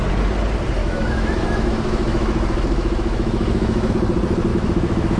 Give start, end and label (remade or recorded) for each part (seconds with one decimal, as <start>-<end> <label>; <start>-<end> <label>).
0.0-0.8 recorded; 0.8-3.9 remade; 3.9-4.5 recorded; 4.5-5.2 remade